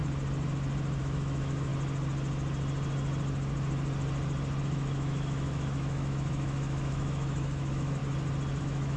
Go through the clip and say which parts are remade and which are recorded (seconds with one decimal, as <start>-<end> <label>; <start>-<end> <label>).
0.0-1.0 recorded; 1.0-1.7 remade; 1.7-4.6 recorded; 4.6-8.0 remade; 8.0-8.6 recorded; 8.6-9.0 remade